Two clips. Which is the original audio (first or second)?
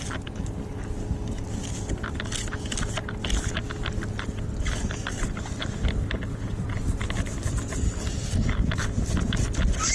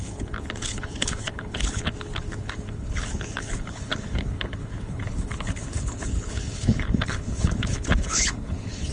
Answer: first